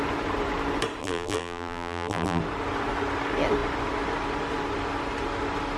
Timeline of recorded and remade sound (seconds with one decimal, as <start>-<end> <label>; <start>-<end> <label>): 0.0-1.0 recorded; 1.0-2.4 remade; 2.4-5.8 recorded